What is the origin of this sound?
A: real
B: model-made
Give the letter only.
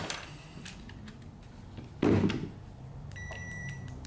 B